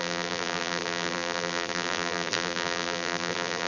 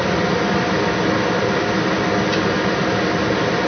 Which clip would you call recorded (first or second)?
second